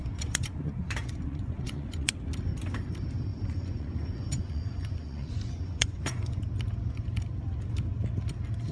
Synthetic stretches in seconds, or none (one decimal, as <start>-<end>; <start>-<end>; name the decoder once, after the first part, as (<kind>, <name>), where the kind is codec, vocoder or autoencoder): 0.0-2.1 (vocoder, Vocos); 3.3-6.4